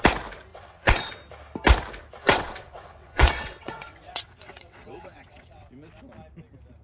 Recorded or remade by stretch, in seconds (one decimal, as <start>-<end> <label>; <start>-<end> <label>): 0.0-0.5 recorded; 0.5-1.1 remade; 1.1-2.2 recorded; 2.2-5.7 remade; 5.7-6.8 recorded